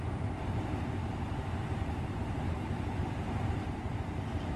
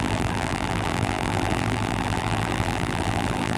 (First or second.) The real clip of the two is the first